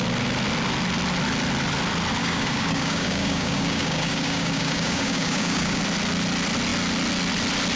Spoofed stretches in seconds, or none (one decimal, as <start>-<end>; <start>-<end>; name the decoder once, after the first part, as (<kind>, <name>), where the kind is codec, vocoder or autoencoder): 2.2-5.8 (codec, DAC)